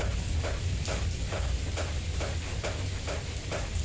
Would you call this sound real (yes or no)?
yes